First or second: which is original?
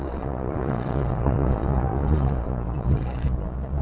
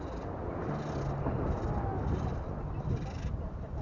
second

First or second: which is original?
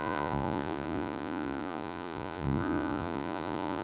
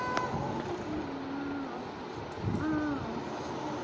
second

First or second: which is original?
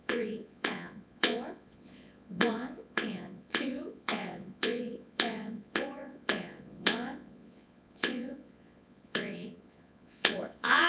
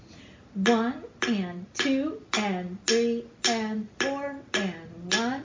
second